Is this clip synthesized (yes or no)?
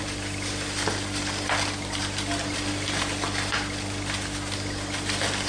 no